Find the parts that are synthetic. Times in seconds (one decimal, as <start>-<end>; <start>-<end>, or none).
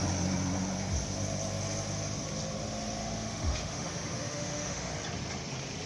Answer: 3.0-4.9